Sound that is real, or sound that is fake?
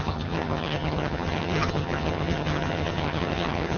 fake